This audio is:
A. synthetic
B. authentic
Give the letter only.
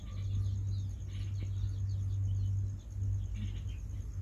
B